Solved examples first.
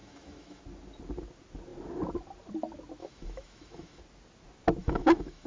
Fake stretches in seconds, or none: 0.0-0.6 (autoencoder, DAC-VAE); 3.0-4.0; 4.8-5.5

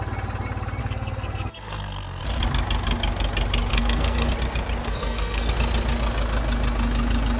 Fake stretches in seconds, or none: 0.8-2.2 (codec, SNAC); 3.7-4.3; 4.8-5.5